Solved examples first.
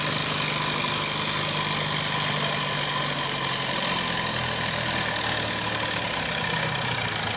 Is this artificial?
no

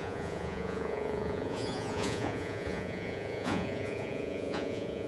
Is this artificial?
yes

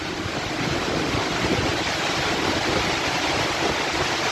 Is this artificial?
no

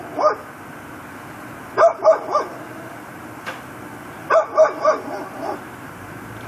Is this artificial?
no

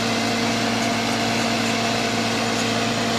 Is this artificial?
no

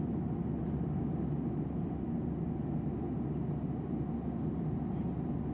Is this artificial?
no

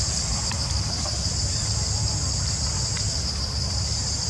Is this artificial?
no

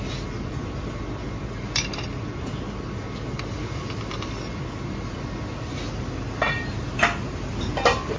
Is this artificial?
no